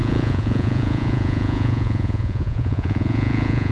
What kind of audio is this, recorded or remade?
remade